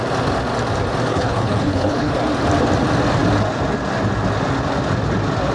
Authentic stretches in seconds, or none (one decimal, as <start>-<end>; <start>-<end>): 0.0-1.1; 2.1-5.5